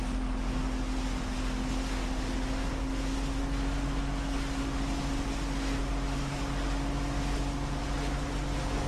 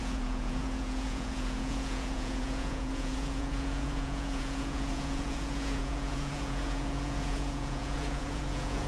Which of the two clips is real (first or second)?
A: first